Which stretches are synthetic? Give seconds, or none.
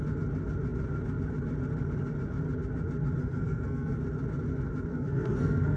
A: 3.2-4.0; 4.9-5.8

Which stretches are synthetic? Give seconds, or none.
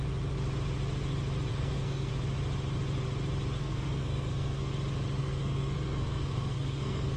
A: 1.5-2.1; 3.6-4.7; 5.2-7.2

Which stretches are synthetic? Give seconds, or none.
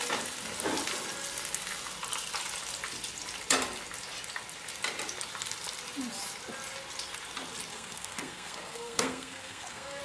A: 7.7-10.0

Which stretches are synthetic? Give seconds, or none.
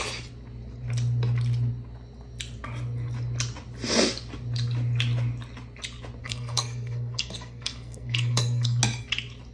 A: 6.2-8.8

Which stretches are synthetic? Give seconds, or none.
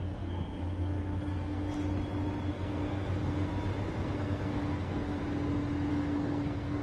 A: 0.0-1.7; 2.5-3.5; 4.0-5.2; 5.9-6.8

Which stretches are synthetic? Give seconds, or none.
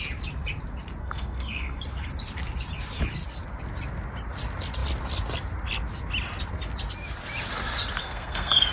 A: 1.0-1.8; 8.0-8.7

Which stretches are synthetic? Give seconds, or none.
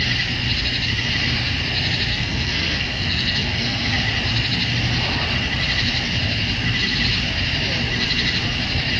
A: 2.1-4.0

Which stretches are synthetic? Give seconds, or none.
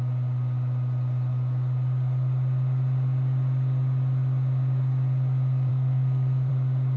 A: 5.7-6.5